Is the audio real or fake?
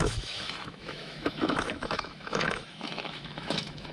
fake